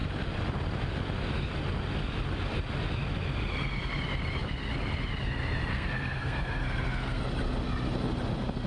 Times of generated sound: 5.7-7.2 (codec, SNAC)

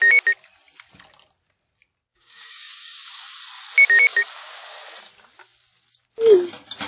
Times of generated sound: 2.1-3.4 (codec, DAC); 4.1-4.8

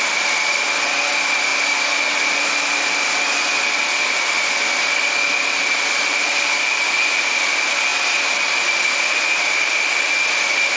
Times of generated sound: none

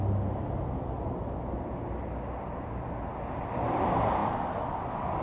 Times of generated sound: none